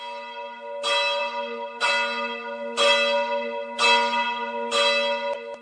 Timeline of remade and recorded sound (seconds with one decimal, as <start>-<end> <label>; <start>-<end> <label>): 0.0-5.6 recorded